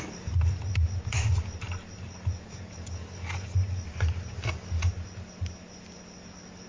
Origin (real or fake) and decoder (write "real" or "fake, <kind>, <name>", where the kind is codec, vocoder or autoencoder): real